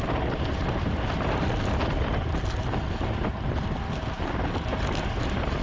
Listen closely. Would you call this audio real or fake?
real